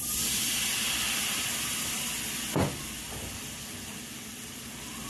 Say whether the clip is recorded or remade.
recorded